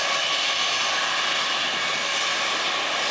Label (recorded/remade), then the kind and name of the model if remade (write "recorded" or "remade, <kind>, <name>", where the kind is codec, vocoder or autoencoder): recorded